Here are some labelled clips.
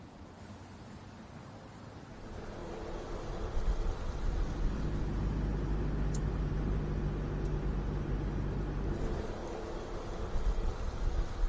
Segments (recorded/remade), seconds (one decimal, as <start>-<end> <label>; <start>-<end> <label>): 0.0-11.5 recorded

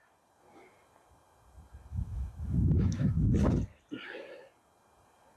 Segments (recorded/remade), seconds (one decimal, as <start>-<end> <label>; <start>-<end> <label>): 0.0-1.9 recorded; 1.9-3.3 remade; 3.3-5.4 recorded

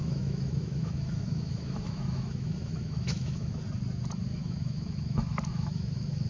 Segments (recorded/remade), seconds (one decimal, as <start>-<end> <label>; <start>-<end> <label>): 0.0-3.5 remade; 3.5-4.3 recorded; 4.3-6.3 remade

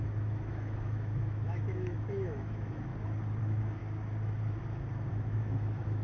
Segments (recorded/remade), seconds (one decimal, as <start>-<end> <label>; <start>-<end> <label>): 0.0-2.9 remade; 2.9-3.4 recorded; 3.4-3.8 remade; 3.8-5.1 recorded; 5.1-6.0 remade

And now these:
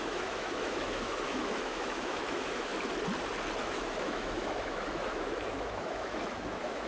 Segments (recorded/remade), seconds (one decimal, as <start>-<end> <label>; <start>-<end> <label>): 0.0-2.7 remade; 2.7-3.6 recorded; 3.6-6.9 remade

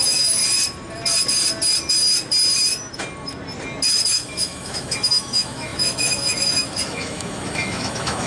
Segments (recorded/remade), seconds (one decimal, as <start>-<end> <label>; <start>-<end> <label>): 0.0-0.4 remade; 0.4-4.1 recorded; 4.1-8.3 remade